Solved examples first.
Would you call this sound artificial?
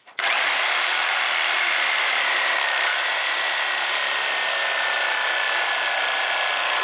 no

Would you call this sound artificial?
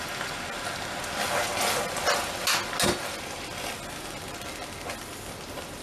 no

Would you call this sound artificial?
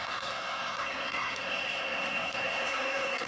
yes